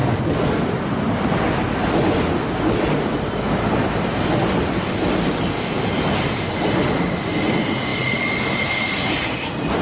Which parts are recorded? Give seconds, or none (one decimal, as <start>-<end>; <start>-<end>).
0.0-9.8